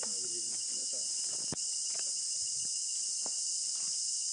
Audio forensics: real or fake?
real